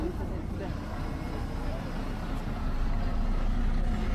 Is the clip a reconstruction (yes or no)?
no